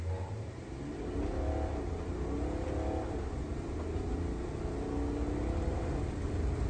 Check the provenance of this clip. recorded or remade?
recorded